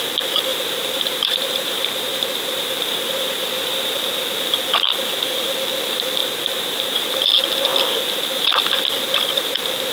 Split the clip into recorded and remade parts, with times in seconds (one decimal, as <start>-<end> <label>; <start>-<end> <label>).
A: 0.0-0.5 recorded; 0.5-3.9 remade; 3.9-6.2 recorded; 6.2-7.1 remade; 7.1-9.9 recorded